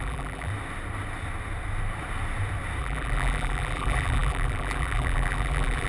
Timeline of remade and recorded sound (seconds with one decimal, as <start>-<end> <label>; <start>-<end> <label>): 0.0-0.5 remade; 0.5-2.8 recorded; 2.8-5.9 remade